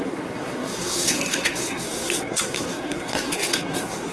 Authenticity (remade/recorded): remade